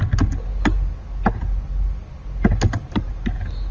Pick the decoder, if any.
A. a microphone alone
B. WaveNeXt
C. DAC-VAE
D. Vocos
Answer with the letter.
A